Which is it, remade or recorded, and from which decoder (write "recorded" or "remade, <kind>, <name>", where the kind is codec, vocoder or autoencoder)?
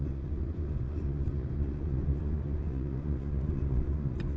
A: remade, vocoder, Vocos